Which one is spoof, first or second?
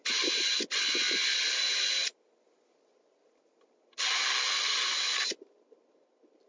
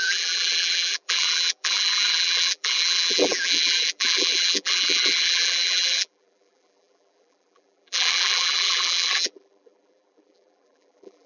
second